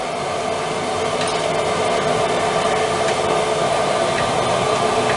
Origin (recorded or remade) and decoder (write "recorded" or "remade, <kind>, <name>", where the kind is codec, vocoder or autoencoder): recorded